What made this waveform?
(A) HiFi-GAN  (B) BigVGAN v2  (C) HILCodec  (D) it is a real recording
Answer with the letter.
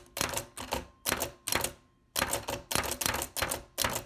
D